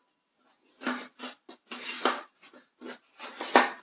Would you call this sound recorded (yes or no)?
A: yes